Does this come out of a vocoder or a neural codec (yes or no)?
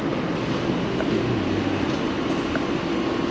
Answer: no